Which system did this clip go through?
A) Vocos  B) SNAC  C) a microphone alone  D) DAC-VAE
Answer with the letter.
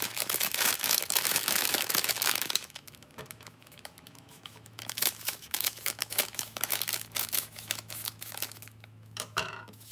D